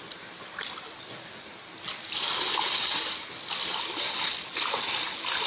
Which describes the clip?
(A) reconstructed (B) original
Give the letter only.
B